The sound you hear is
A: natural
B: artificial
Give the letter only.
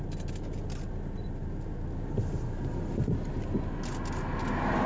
A